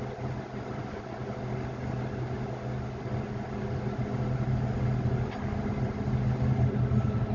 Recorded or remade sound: recorded